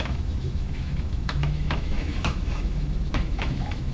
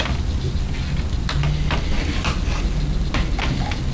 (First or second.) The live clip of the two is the second